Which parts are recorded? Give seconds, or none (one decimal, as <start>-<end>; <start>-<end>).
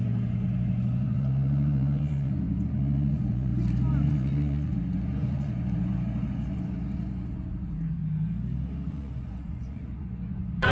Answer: 3.5-4.1; 8.0-8.9